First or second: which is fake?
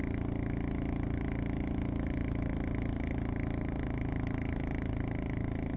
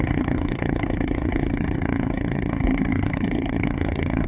second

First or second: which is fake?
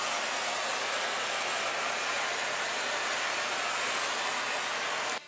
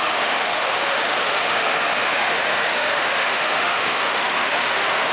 second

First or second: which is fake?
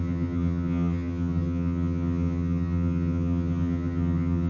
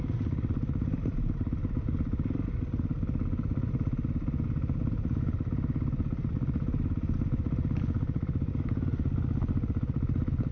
first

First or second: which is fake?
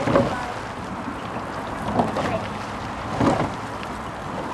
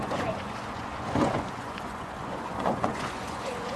second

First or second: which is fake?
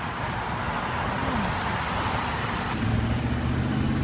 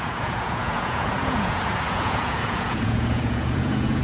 second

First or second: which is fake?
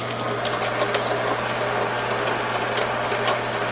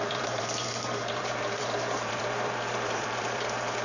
second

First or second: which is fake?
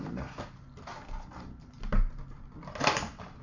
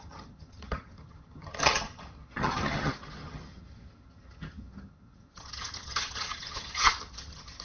second